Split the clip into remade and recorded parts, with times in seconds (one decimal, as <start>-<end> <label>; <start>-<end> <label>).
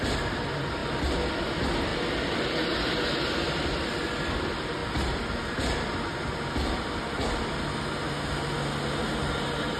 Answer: 0.0-9.8 recorded